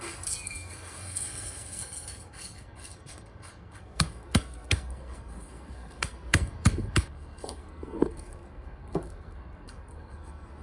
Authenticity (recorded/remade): remade